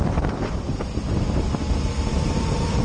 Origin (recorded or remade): remade